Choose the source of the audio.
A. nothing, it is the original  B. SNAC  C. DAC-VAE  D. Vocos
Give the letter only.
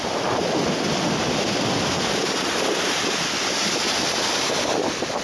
A